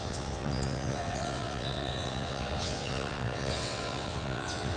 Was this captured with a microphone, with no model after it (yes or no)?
no